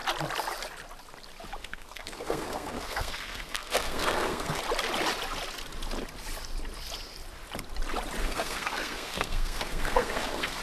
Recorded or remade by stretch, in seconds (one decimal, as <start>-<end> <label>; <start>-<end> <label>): 0.0-1.6 recorded; 1.6-4.6 remade; 4.6-8.2 recorded; 8.2-10.6 remade